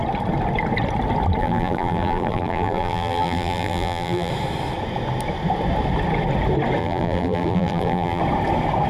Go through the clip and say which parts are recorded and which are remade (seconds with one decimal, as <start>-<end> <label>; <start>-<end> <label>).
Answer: 0.0-1.4 recorded; 1.4-4.3 remade; 4.3-6.8 recorded; 6.8-8.2 remade; 8.2-8.9 recorded

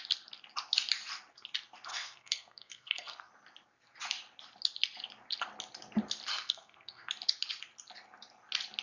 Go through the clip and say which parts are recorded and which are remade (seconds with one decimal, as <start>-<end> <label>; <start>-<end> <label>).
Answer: 0.0-1.9 recorded; 1.9-3.3 remade; 3.3-6.3 recorded; 6.3-7.1 remade; 7.1-8.8 recorded

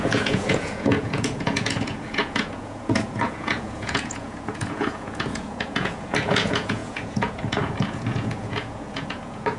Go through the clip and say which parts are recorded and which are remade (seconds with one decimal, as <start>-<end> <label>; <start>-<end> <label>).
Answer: 0.0-9.6 remade